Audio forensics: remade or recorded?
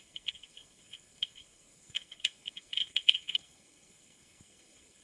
remade